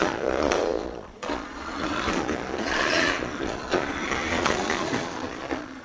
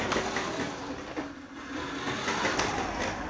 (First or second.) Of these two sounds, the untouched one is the second